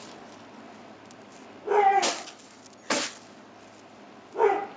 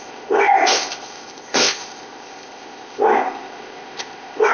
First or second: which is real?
first